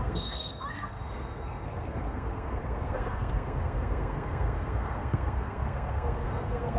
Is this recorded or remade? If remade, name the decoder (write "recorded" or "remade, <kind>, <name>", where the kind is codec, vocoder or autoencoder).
remade, codec, SNAC